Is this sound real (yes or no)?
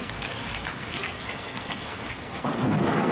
no